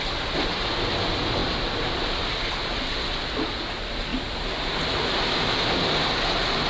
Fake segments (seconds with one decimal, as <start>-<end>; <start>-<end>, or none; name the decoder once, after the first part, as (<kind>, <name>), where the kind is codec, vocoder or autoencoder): none